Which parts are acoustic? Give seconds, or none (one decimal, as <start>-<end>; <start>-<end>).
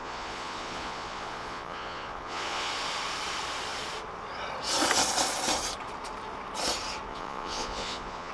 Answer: 2.7-7.1